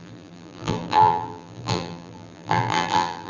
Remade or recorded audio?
remade